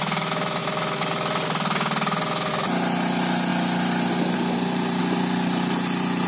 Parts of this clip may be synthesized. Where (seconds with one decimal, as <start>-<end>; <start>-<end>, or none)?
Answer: none